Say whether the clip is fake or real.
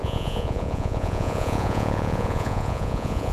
fake